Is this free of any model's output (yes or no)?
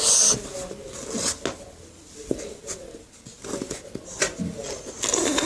yes